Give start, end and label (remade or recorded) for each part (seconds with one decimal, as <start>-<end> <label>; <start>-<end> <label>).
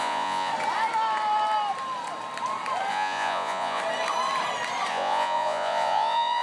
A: 0.0-0.5 remade; 0.5-2.9 recorded; 2.9-3.8 remade; 3.8-4.9 recorded; 4.9-6.4 remade